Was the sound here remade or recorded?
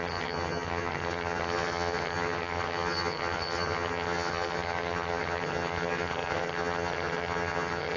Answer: remade